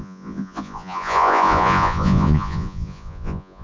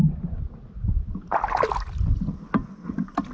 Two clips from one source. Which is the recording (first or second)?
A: second